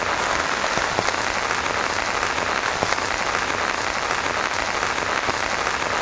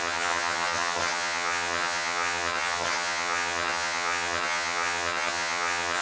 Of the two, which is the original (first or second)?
first